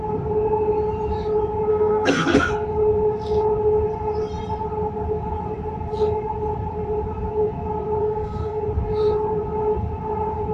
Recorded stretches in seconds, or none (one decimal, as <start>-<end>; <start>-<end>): 0.0-1.7; 2.5-8.0; 8.6-10.5